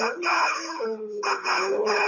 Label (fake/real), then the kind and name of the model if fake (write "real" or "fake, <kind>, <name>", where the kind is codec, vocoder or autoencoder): fake, codec, HILCodec